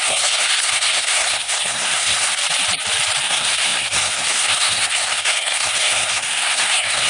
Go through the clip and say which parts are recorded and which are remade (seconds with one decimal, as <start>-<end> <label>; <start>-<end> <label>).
0.0-2.4 remade; 2.4-3.2 recorded; 3.2-7.1 remade